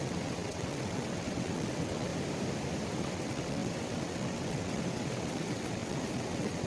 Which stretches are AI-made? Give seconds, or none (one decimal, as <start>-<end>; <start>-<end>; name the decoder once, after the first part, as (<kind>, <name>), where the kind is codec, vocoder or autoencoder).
0.0-2.1 (vocoder, WaveNeXt); 2.9-6.7